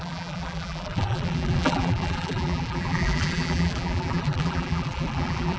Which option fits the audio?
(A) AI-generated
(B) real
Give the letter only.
A